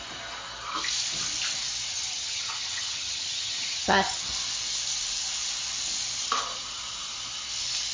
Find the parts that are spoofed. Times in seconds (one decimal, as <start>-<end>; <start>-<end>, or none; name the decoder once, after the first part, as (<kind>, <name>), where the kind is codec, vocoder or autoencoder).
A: 1.9-4.3 (vocoder, HiFi-GAN)